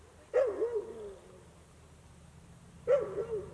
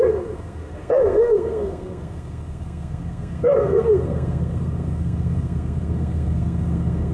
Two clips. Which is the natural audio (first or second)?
first